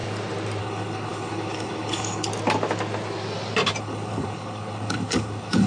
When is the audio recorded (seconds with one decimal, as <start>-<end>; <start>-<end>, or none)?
0.0-0.6; 2.3-3.8